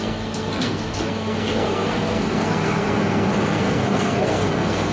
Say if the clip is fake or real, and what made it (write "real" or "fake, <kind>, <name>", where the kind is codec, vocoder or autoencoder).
fake, codec, SNAC